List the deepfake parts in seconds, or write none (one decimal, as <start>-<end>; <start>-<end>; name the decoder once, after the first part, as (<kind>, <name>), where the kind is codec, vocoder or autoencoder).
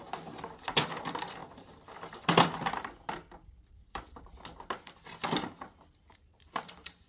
1.4-4.2 (vocoder, BigVGAN v2)